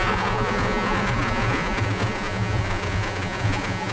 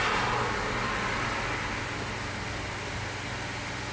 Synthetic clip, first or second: first